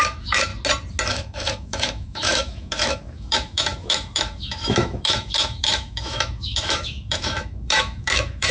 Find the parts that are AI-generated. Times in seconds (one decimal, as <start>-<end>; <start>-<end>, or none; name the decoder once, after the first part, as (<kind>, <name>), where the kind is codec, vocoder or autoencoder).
0.0-0.5 (autoencoder, DAC-VAE); 1.1-8.5